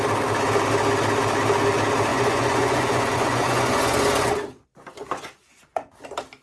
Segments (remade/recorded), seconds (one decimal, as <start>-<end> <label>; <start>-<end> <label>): 0.0-2.1 recorded; 2.1-5.9 remade; 5.9-6.4 recorded